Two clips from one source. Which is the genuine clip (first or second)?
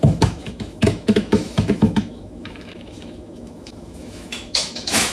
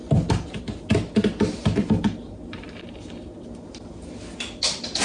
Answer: second